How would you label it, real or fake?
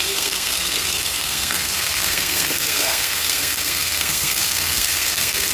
fake